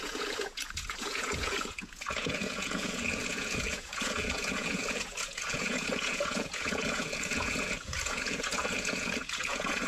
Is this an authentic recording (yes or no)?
no